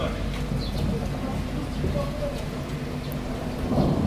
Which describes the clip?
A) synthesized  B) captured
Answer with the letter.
B